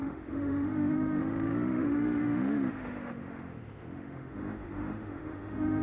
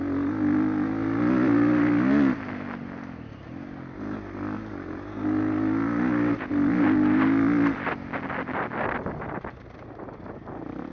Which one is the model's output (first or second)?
first